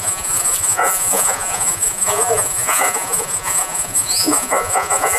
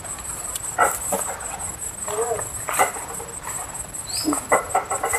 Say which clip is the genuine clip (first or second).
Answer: second